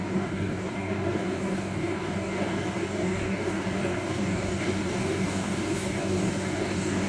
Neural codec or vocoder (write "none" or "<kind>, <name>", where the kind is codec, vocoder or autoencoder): codec, DAC